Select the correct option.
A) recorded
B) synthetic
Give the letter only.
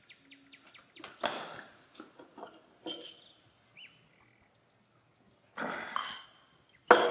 A